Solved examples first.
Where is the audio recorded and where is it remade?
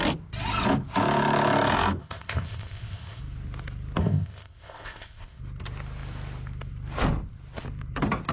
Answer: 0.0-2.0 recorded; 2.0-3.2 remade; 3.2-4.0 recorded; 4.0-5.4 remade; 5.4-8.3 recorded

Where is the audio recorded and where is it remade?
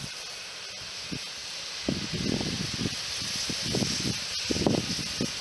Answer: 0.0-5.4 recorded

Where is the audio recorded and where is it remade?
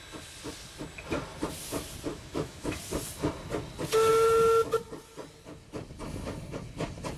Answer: 0.0-2.1 recorded; 2.1-2.8 remade; 2.8-7.2 recorded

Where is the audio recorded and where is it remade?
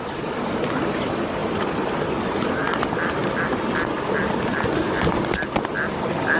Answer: 0.0-6.4 recorded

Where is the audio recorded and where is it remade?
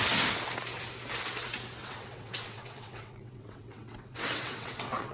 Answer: 0.0-1.8 recorded; 1.8-5.1 remade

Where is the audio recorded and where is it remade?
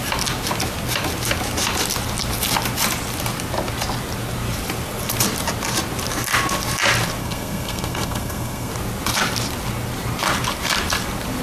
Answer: 0.0-7.2 recorded; 7.2-8.7 remade; 8.7-11.4 recorded